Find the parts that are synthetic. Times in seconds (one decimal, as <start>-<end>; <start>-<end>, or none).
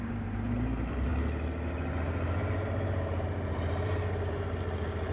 0.0-1.1; 2.0-5.1